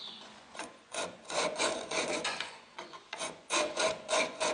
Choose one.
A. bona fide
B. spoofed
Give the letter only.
B